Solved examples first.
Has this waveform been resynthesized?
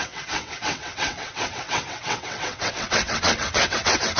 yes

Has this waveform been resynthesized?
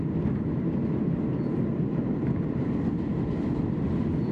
no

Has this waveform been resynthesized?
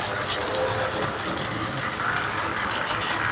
no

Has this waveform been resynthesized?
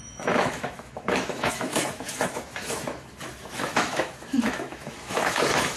yes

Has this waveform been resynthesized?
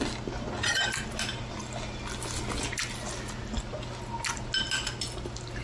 no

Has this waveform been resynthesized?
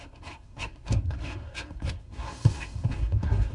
yes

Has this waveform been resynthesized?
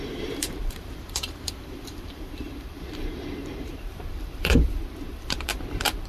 yes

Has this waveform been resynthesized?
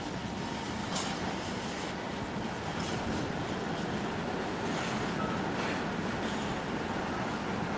no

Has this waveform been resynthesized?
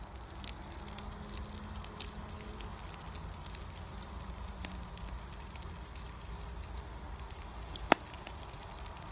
no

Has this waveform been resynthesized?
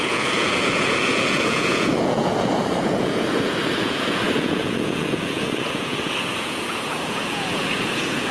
yes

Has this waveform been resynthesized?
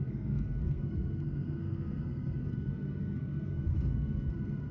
yes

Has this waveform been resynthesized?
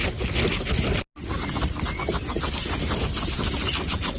no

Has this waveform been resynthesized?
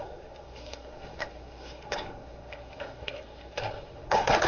yes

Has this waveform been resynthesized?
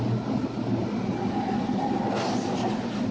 no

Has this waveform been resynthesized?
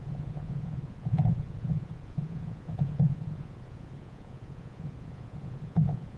yes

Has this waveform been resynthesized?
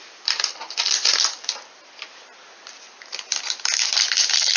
no